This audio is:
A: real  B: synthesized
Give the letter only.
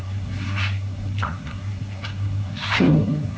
B